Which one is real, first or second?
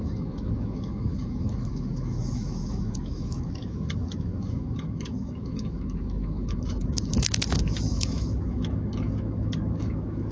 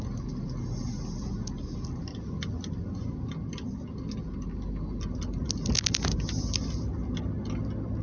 second